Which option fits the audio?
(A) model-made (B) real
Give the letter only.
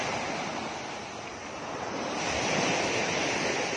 A